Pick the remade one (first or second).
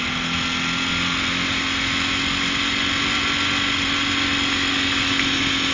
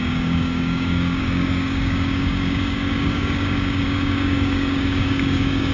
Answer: second